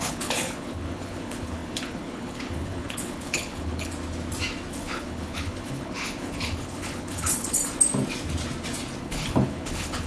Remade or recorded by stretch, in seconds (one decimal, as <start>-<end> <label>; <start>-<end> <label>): 0.0-3.9 remade; 3.9-4.7 recorded; 4.7-7.6 remade; 7.6-9.0 recorded; 9.0-10.1 remade